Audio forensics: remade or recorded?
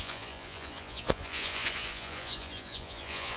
remade